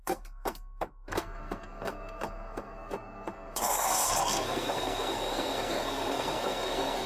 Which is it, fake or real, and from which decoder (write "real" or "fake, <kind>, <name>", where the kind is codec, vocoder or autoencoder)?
fake, codec, SNAC